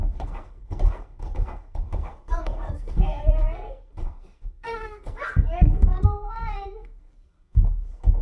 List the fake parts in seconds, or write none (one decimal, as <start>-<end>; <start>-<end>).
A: 0.0-8.2